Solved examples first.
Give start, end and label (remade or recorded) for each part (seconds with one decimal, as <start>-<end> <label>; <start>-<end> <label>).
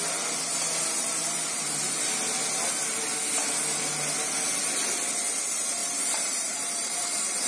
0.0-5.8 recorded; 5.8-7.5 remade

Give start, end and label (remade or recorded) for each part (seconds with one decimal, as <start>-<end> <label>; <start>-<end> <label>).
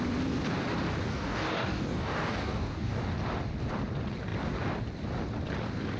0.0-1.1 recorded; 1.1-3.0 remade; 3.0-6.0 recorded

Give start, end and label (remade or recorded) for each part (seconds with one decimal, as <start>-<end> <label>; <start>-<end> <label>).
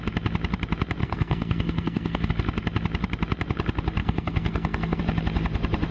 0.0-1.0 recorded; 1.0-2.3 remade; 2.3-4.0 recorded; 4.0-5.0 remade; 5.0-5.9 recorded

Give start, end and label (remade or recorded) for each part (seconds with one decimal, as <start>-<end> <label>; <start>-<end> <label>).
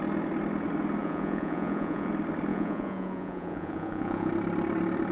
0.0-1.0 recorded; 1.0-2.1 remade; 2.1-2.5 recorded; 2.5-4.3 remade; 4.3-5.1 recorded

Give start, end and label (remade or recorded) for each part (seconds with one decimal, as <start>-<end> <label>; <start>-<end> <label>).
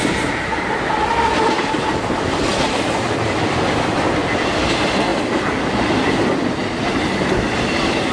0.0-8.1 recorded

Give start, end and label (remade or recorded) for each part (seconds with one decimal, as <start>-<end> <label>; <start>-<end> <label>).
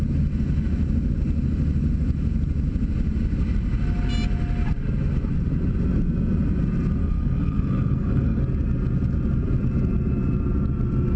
0.0-7.0 recorded; 7.0-8.4 remade; 8.4-11.2 recorded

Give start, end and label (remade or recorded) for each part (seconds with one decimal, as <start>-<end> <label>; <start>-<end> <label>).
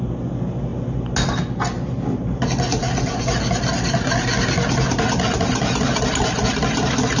0.0-7.2 recorded